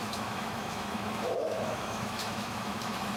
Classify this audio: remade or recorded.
remade